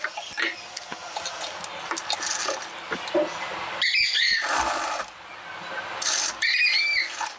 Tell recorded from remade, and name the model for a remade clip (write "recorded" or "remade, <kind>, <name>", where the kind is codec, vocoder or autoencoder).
recorded